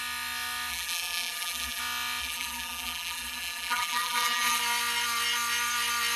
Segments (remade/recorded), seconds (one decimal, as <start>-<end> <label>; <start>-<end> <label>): 0.0-0.7 recorded; 0.7-1.8 remade; 1.8-2.2 recorded; 2.2-4.6 remade; 4.6-6.2 recorded